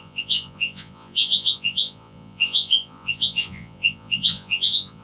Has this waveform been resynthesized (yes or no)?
yes